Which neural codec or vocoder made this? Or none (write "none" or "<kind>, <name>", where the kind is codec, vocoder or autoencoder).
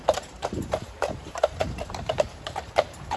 vocoder, BigVGAN v2